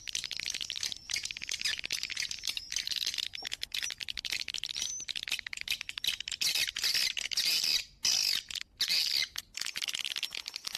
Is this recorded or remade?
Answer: recorded